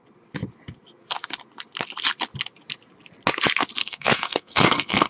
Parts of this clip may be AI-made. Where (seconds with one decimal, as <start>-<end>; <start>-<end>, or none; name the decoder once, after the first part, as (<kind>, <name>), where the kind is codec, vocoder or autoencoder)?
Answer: 3.8-5.1 (codec, SNAC)